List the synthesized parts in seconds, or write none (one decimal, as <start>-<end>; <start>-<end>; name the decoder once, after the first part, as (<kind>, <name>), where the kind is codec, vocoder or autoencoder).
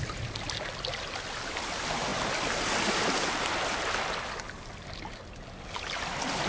none